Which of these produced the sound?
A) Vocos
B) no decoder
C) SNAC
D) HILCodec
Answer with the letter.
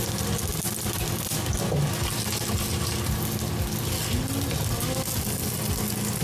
B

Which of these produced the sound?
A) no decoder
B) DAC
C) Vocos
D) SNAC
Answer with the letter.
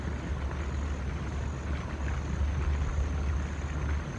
A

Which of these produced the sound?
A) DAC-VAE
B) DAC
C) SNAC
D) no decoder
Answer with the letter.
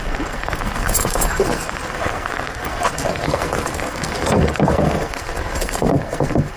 C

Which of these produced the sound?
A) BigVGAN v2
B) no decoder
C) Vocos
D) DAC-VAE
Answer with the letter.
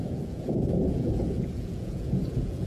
C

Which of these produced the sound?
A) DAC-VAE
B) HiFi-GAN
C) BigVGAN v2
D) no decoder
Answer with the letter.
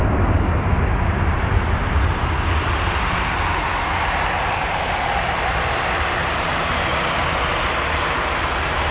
D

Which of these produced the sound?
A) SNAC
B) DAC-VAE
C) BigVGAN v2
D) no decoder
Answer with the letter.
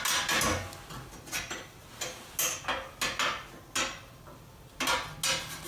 D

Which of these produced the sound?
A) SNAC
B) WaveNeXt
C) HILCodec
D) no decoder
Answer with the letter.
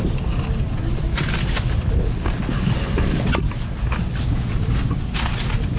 D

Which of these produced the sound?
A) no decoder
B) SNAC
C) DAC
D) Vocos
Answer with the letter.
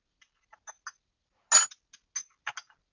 A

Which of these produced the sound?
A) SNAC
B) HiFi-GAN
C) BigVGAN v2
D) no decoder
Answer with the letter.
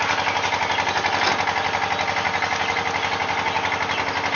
D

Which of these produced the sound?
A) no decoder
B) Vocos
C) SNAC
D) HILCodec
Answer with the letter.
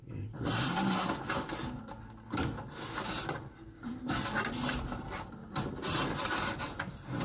A